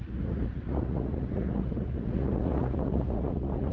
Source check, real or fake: fake